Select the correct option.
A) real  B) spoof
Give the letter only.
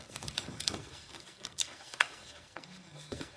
B